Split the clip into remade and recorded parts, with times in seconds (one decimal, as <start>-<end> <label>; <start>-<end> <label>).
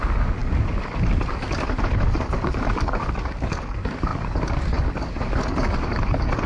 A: 0.0-6.5 remade